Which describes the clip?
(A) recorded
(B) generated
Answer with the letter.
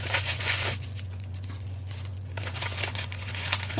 B